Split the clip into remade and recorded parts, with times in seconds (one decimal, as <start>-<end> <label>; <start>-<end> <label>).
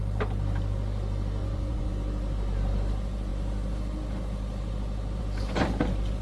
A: 0.0-1.4 recorded; 1.4-1.9 remade; 1.9-6.2 recorded